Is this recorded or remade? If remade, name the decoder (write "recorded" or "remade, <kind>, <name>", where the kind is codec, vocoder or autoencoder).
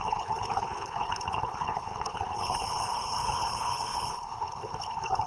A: remade, codec, HILCodec